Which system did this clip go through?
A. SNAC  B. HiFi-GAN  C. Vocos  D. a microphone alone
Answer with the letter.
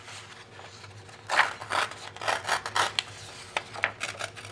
D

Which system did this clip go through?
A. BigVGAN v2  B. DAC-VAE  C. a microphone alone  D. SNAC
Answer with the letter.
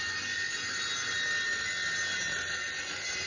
C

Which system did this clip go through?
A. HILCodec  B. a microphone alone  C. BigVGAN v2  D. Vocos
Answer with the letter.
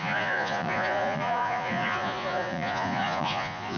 D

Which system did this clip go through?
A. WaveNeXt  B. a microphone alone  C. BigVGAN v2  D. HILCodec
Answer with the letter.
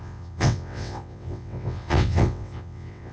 A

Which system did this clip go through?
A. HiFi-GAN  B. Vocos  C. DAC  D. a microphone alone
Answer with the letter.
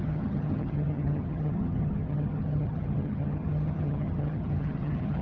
A